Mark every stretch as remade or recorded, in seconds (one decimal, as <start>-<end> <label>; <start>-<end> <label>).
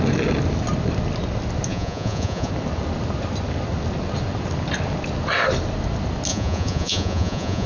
0.0-1.7 recorded; 1.7-2.5 remade; 2.5-6.3 recorded; 6.3-7.7 remade